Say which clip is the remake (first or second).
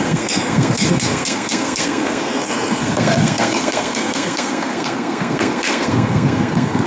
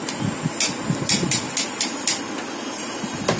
first